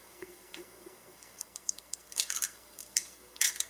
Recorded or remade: remade